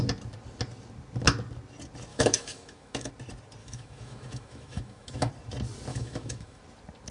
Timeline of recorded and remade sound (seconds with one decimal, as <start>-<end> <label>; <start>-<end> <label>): 0.0-2.1 recorded; 2.1-3.1 remade; 3.1-3.6 recorded; 3.6-5.3 remade; 5.3-5.9 recorded; 5.9-6.6 remade; 6.6-7.1 recorded

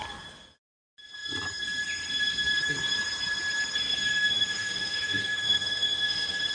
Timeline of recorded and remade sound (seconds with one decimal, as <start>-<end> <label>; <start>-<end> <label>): 0.0-4.1 recorded; 4.1-6.5 remade

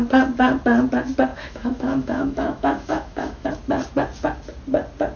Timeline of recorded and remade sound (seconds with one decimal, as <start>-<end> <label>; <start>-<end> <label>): 0.0-1.3 recorded; 1.3-3.5 remade; 3.5-5.2 recorded